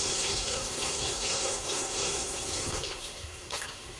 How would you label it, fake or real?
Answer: fake